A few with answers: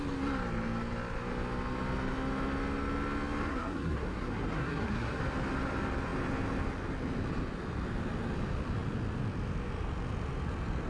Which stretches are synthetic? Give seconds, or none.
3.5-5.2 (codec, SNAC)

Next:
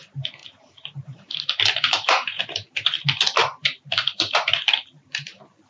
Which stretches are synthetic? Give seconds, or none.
0.4-3.0 (vocoder, BigVGAN v2); 3.4-5.7

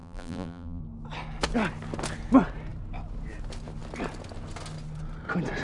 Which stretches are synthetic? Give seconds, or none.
0.0-0.8 (vocoder, BigVGAN v2)

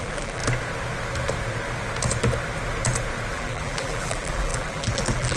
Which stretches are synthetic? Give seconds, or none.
0.0-0.4 (vocoder, BigVGAN v2); 3.3-5.4

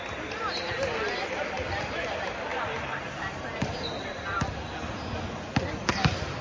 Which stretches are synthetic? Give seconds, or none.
2.5-4.5 (vocoder, BigVGAN v2)